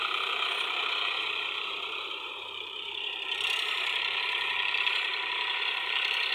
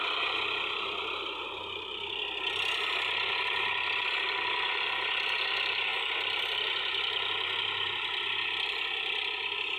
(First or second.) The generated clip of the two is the first